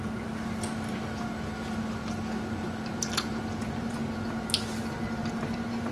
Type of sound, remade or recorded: recorded